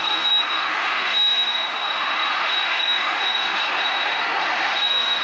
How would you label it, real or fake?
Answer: fake